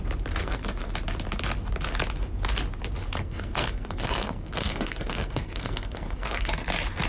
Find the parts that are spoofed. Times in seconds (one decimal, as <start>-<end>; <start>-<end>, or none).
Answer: 0.4-0.9; 3.2-6.5